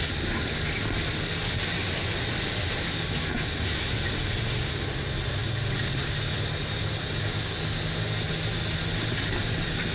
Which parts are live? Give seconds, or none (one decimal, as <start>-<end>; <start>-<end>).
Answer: 0.0-9.9